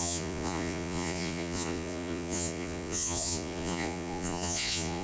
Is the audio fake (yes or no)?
yes